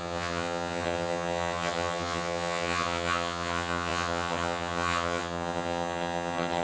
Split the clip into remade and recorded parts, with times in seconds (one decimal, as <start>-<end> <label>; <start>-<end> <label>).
0.0-6.6 remade